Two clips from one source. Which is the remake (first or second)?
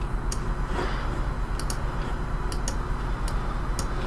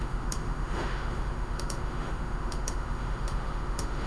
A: second